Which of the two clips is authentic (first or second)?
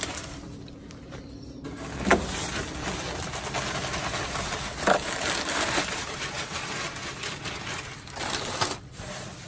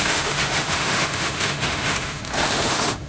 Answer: first